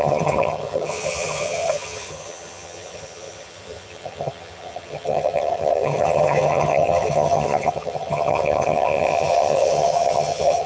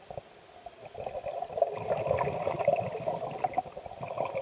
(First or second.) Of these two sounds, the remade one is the first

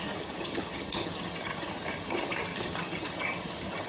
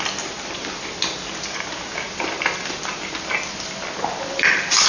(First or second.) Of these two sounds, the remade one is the first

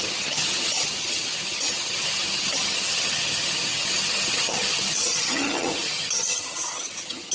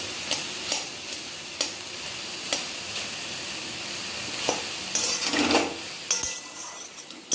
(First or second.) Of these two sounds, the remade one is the first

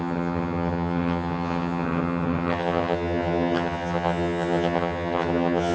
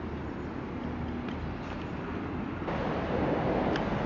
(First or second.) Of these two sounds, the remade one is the first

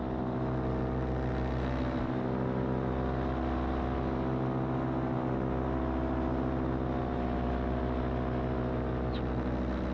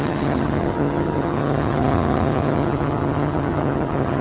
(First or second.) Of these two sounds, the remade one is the second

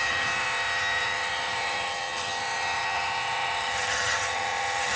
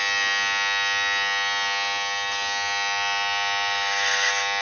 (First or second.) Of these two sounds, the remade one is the first